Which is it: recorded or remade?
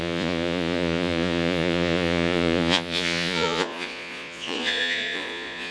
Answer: remade